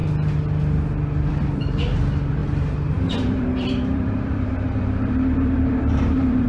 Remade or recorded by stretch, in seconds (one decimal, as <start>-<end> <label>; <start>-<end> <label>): 0.0-2.4 recorded; 2.4-6.5 remade